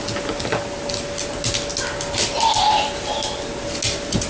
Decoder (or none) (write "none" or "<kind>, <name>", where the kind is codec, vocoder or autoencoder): none